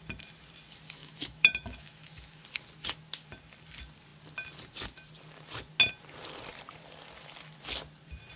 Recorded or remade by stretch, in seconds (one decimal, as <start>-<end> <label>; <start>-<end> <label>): 0.0-1.0 recorded; 1.0-2.4 remade; 2.4-8.4 recorded